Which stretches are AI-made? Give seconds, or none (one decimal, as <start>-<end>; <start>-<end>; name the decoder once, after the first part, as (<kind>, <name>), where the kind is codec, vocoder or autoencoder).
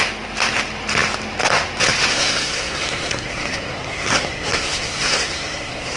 2.1-6.0 (codec, SNAC)